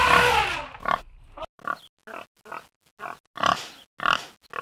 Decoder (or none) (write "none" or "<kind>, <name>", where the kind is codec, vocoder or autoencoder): none